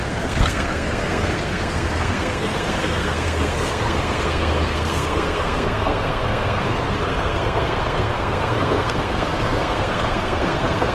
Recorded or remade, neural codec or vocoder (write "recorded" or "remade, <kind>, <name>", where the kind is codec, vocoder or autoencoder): remade, codec, SNAC